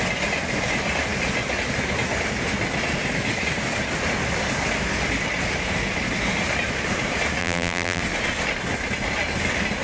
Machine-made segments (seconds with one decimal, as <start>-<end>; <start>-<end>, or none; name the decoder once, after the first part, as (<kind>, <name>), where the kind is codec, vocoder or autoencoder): 7.4-8.0 (vocoder, BigVGAN v2)